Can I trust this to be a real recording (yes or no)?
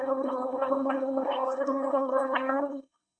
no